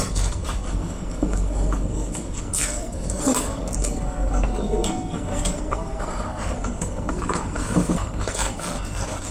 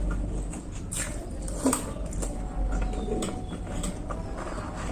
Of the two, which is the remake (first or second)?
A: first